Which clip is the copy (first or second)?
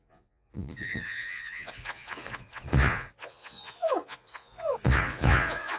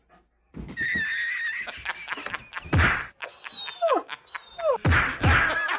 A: first